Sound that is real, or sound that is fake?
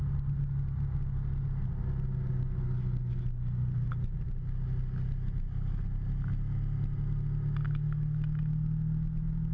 real